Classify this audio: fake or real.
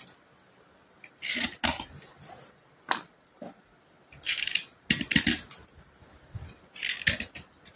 real